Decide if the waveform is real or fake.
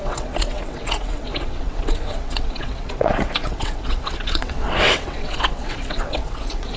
fake